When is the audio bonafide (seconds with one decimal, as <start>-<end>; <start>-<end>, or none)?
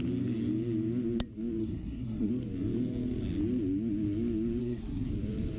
0.0-1.6; 2.3-4.6; 5.1-5.6